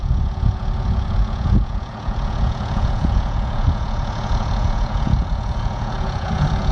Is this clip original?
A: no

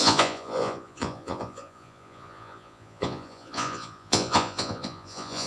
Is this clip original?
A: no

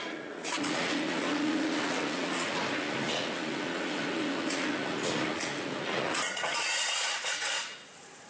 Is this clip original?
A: no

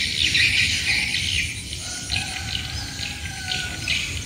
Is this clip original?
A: yes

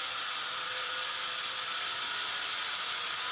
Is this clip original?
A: yes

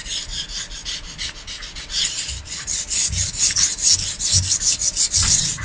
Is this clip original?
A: yes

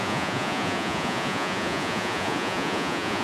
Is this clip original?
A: no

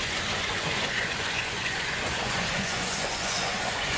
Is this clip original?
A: no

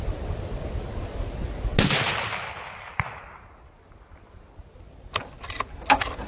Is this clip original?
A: yes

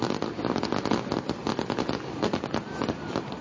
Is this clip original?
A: yes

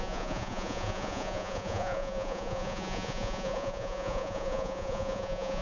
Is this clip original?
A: no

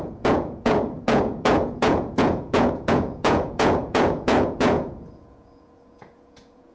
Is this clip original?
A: no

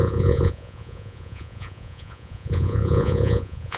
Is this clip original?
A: no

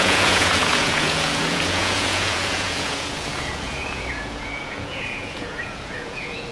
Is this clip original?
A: no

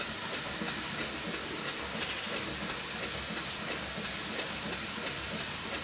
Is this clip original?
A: yes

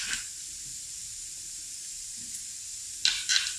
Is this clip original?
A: yes